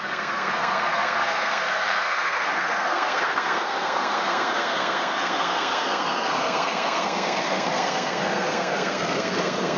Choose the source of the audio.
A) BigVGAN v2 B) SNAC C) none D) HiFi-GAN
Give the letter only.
B